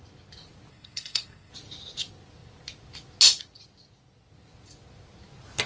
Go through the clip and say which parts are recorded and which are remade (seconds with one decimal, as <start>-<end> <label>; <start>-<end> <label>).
0.0-0.7 recorded; 0.7-1.5 remade; 1.5-5.7 recorded